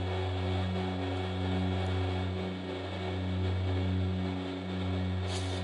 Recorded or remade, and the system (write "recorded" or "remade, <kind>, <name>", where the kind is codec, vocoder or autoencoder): recorded